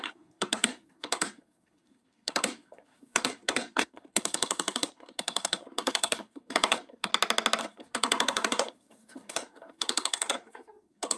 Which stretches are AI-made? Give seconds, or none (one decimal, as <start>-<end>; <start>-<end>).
0.0-7.1; 7.6-11.2